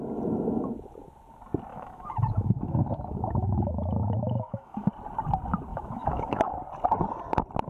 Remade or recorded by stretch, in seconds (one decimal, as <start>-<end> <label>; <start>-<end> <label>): 0.0-1.7 recorded; 1.7-4.9 remade; 4.9-5.7 recorded; 5.7-6.5 remade; 6.5-7.7 recorded